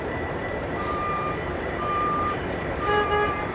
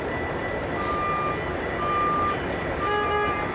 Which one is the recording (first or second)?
second